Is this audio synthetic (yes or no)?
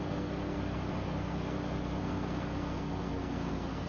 yes